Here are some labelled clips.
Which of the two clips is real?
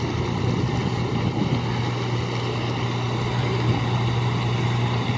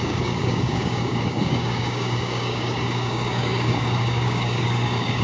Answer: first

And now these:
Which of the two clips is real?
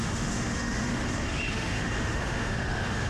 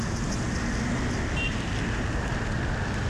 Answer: second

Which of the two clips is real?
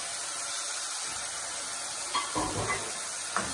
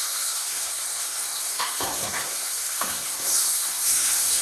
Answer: first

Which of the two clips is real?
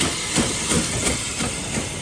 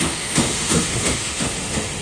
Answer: first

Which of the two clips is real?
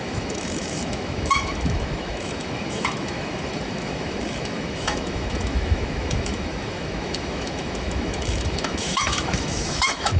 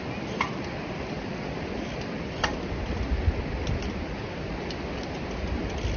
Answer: second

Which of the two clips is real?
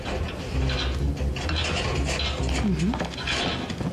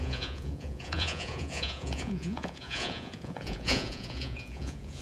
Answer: first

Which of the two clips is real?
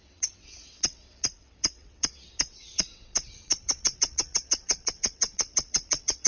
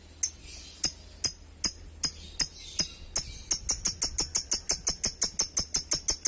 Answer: second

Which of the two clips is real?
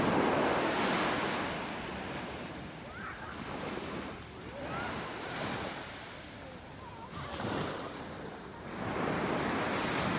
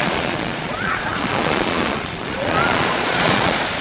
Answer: first